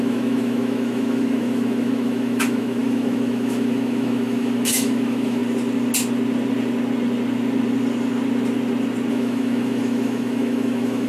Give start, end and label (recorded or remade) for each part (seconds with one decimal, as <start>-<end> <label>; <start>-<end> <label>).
0.0-5.4 remade; 5.4-9.1 recorded; 9.1-11.1 remade